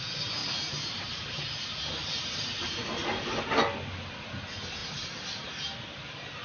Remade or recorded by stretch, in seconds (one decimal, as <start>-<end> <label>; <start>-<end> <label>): 0.0-0.4 recorded; 0.4-3.4 remade; 3.4-4.8 recorded; 4.8-5.3 remade; 5.3-6.4 recorded